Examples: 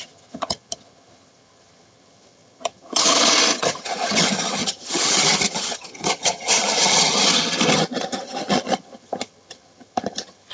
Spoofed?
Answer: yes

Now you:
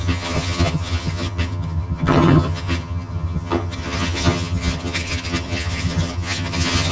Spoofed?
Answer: yes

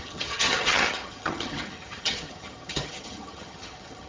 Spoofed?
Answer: yes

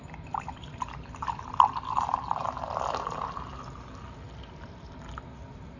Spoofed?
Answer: no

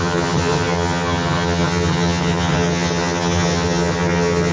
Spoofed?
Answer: yes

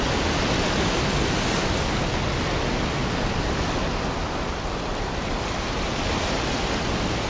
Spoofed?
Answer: no